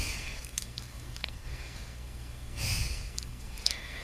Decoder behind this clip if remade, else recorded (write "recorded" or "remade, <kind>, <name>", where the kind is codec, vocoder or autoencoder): remade, codec, SNAC